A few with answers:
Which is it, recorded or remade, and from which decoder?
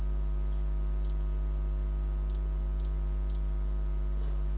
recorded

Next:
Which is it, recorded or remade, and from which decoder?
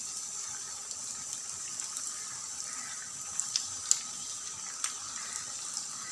recorded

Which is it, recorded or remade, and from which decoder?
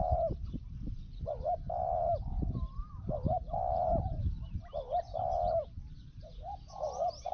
remade, vocoder, BigVGAN v2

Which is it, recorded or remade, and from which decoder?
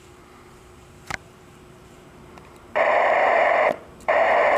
remade, vocoder, BigVGAN v2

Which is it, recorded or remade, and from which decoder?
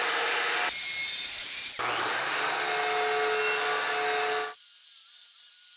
recorded